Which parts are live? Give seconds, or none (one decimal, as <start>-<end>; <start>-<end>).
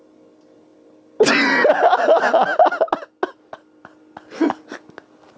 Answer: 0.0-5.4